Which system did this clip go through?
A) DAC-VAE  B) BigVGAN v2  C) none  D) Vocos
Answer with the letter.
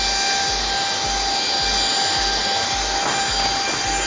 C